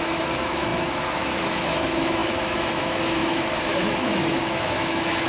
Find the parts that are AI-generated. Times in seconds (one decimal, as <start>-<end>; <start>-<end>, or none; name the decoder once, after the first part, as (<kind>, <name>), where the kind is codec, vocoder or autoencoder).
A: 0.0-5.3 (autoencoder, DAC-VAE)